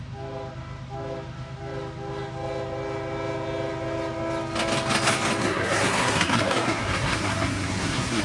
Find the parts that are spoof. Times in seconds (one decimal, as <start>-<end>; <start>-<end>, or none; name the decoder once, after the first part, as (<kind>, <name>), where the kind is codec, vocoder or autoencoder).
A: 5.4-8.2 (codec, SNAC)